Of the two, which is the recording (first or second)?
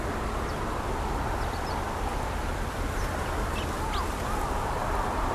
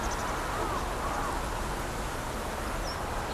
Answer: second